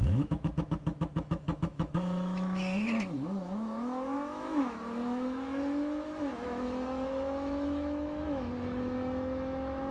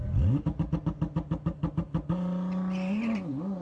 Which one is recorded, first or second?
second